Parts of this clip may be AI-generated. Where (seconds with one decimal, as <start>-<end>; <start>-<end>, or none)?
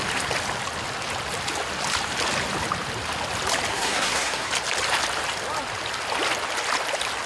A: 3.7-4.5